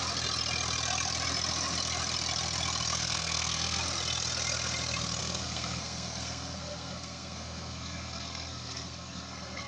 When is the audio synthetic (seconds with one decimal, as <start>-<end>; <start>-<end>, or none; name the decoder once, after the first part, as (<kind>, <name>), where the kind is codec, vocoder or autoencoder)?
2.9-3.8 (codec, SNAC); 5.2-9.7

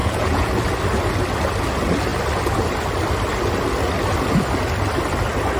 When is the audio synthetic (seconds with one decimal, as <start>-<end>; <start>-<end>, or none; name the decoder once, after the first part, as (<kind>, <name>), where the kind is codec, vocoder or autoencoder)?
0.0-0.5 (vocoder, Vocos)

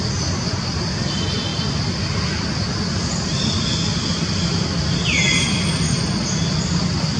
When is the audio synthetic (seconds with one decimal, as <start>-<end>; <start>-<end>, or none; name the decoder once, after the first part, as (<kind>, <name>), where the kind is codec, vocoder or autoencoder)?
none

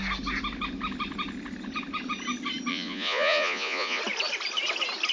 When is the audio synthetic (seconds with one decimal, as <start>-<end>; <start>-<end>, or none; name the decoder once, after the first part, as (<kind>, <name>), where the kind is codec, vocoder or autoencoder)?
2.7-4.0 (vocoder, Vocos)

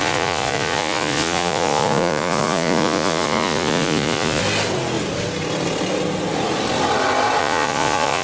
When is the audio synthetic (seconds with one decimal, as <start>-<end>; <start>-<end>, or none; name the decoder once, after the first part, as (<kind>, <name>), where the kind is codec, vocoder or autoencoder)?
0.0-4.4 (vocoder, Vocos); 7.4-8.2

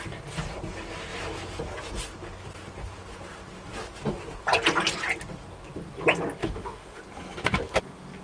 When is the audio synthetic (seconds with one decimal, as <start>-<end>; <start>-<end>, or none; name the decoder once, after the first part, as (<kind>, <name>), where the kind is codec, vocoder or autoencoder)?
6.4-7.0 (autoencoder, DAC-VAE)

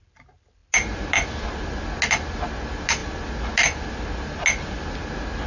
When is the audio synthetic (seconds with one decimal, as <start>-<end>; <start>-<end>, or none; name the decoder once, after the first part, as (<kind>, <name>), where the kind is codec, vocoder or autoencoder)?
none